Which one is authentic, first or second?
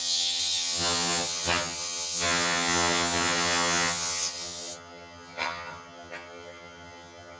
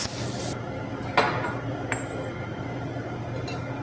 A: second